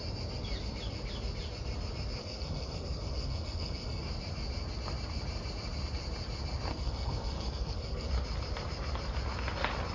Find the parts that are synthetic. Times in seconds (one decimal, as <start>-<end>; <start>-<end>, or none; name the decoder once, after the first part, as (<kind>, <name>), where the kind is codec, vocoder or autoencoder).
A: 2.2-4.0 (codec, SNAC); 6.7-8.1